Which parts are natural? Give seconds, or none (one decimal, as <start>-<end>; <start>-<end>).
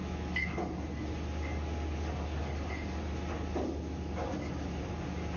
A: 0.6-5.4